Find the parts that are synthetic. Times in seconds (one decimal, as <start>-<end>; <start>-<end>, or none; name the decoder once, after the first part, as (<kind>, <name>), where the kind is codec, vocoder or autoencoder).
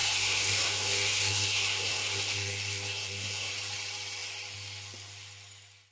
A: 0.0-3.5 (codec, SNAC)